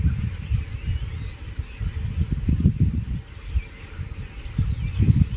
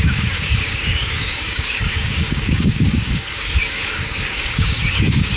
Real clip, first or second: first